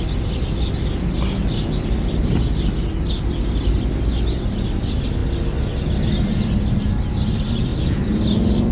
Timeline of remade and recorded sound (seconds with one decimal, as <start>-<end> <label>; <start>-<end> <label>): 0.0-8.7 recorded